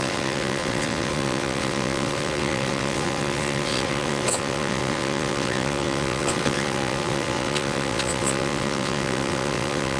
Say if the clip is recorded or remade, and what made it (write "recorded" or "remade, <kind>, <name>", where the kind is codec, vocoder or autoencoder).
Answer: remade, vocoder, WaveNeXt